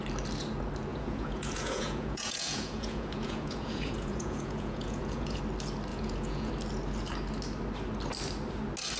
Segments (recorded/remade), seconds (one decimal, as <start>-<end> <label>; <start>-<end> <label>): 0.0-0.9 recorded; 0.9-5.4 remade; 5.4-5.9 recorded; 5.9-6.5 remade; 6.5-9.0 recorded